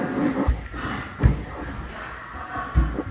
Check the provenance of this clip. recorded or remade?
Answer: recorded